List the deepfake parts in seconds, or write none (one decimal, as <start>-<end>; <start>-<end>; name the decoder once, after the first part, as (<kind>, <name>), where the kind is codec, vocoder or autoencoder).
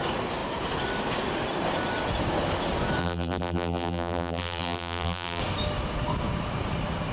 3.0-5.4 (vocoder, BigVGAN v2)